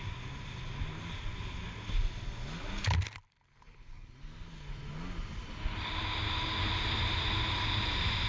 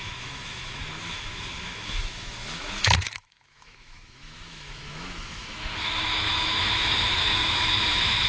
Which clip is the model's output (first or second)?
second